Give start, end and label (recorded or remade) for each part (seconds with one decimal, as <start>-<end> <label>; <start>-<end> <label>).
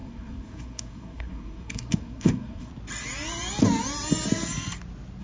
0.0-2.7 remade; 2.7-5.2 recorded